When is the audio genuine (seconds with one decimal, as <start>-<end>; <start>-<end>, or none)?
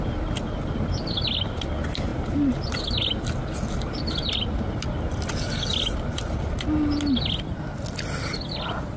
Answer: 0.0-9.0